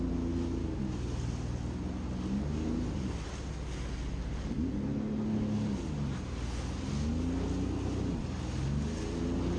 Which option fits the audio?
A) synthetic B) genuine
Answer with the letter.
B